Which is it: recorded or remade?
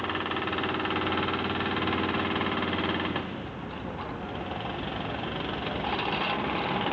recorded